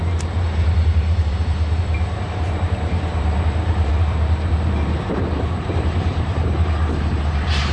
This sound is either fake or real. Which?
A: fake